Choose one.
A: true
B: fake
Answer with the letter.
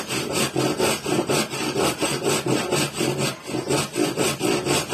A